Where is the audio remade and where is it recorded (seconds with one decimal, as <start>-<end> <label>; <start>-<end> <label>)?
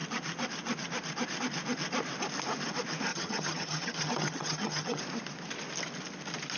0.0-3.1 recorded; 3.1-5.0 remade; 5.0-6.6 recorded